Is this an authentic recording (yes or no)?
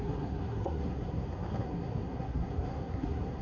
no